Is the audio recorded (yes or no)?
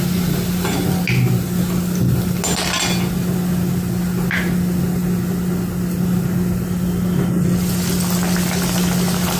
yes